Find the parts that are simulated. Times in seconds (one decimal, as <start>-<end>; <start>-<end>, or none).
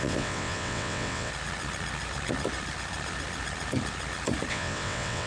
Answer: 0.0-1.3; 4.5-5.3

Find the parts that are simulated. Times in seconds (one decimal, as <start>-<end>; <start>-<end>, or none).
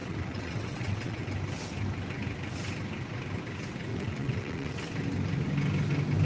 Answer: 0.0-1.2; 3.9-4.9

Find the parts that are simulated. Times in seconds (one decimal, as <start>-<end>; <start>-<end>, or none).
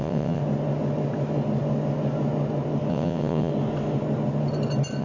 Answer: 0.0-0.4; 2.9-3.5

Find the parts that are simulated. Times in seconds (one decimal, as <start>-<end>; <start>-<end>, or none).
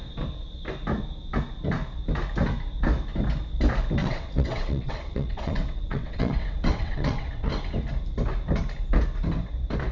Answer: 4.0-7.5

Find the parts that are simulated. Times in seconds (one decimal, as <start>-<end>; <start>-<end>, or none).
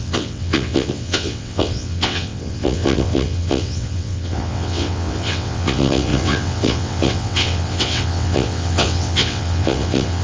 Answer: 0.0-10.2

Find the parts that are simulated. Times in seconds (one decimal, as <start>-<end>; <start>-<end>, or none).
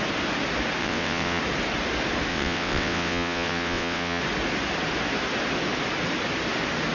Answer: 0.8-1.4; 2.3-4.2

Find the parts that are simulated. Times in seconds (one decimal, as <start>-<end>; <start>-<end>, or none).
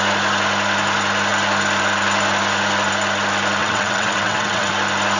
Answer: 3.6-4.7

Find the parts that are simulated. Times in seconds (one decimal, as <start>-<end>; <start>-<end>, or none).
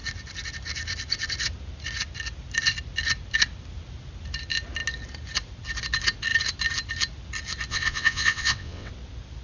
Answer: 7.7-8.9